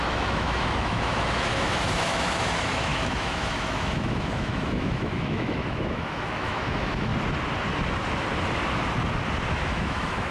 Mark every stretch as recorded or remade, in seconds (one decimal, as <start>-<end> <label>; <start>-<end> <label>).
0.0-7.1 remade; 7.1-9.5 recorded; 9.5-10.3 remade